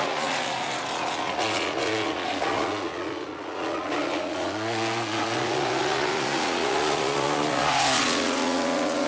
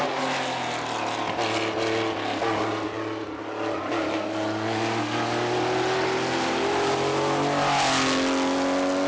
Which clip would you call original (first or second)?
second